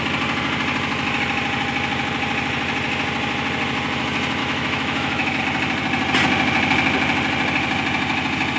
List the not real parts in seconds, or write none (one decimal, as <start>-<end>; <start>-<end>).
4.4-5.4